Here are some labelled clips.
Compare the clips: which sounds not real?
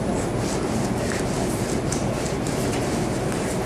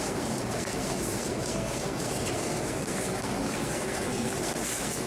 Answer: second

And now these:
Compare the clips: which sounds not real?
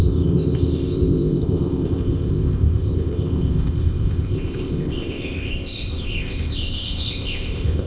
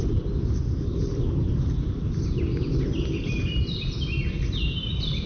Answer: first